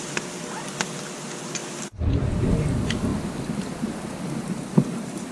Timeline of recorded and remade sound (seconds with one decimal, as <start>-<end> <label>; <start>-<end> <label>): 0.0-3.1 recorded; 3.1-5.3 remade